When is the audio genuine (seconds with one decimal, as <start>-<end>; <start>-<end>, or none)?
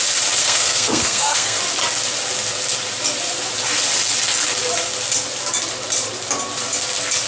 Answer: 0.0-0.4; 1.6-7.3